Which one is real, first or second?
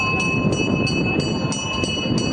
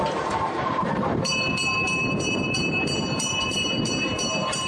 first